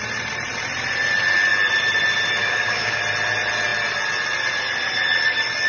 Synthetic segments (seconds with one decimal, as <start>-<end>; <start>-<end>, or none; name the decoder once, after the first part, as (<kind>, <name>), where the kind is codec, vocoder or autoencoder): 2.4-3.0 (codec, DAC)

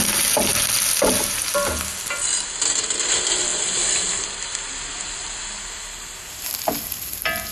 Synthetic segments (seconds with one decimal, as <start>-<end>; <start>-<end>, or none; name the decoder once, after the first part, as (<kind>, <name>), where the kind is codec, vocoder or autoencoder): none

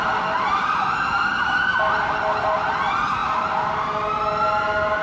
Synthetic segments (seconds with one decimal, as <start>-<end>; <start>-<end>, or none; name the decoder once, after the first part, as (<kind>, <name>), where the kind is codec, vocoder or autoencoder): none

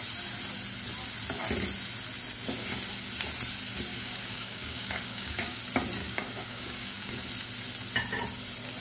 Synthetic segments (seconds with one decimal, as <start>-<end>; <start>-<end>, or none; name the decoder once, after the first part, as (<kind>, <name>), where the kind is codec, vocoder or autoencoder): 3.9-5.6 (codec, DAC); 6.0-7.1

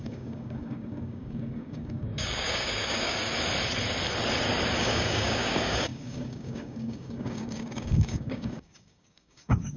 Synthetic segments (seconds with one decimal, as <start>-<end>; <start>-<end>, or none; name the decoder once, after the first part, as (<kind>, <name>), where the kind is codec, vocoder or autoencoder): 0.0-3.2 (codec, DAC); 4.8-9.8

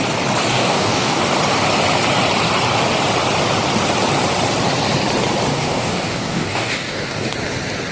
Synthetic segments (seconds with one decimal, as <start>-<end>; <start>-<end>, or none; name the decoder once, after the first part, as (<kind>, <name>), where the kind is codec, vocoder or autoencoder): 0.5-1.2 (codec, DAC); 5.5-7.3

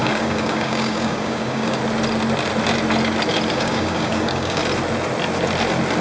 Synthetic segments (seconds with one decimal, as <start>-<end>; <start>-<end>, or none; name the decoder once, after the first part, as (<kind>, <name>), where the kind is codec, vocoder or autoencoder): 0.0-1.8 (codec, DAC); 3.5-4.6

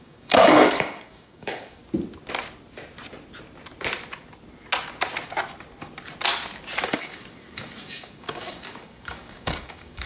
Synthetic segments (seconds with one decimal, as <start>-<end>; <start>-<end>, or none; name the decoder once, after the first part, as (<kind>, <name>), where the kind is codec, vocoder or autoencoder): 0.0-1.8 (codec, DAC); 6.9-10.1